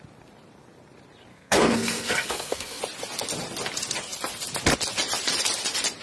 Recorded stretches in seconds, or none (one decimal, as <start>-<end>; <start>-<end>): 0.0-1.3; 2.8-6.0